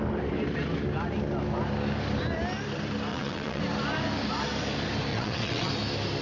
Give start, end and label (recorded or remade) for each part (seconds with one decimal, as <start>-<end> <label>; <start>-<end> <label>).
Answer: 0.0-3.1 recorded; 3.1-3.6 remade; 3.6-5.1 recorded; 5.1-5.7 remade; 5.7-6.2 recorded